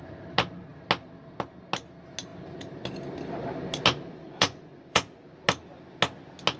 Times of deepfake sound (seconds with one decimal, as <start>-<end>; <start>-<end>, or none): 4.1-5.1